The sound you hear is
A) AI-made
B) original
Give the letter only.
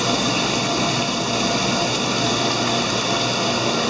B